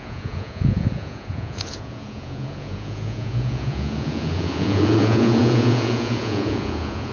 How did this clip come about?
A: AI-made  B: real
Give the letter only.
A